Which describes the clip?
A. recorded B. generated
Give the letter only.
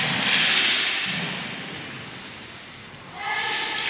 A